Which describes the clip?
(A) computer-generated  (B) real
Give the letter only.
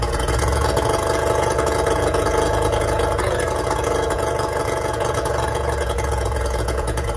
A